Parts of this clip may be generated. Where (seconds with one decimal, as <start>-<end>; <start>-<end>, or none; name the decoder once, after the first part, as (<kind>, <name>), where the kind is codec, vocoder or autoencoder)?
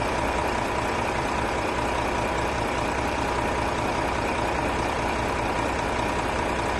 0.0-6.8 (vocoder, BigVGAN v2)